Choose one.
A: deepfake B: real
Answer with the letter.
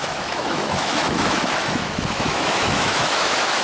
A